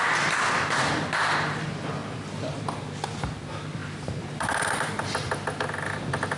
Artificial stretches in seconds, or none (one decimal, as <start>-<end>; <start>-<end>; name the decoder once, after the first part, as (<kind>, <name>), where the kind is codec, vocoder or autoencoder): 2.0-2.8 (vocoder, BigVGAN v2); 3.8-5.0